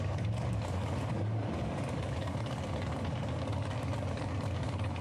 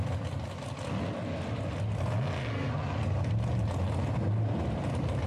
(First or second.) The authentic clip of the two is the second